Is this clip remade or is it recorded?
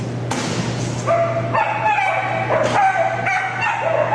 recorded